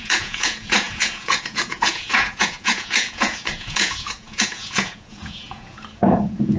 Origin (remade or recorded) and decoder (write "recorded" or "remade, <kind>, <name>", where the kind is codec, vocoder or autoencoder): remade, vocoder, Vocos